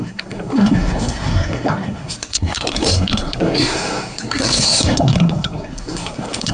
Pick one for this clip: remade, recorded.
remade